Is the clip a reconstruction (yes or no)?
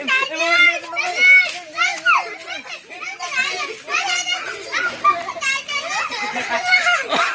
yes